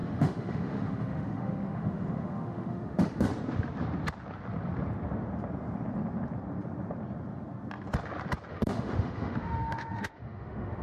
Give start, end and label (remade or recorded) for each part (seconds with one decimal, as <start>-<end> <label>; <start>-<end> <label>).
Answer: 0.0-3.3 remade; 3.3-8.5 recorded; 8.5-10.8 remade